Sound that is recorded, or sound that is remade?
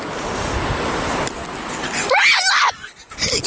recorded